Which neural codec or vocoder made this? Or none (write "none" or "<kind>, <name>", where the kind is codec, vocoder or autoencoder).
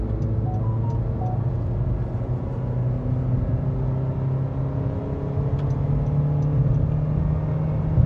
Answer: none